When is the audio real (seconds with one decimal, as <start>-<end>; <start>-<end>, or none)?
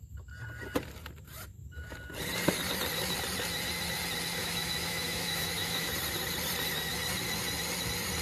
0.0-4.4; 5.9-8.2